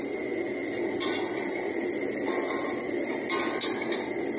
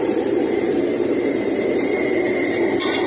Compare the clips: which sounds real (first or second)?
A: first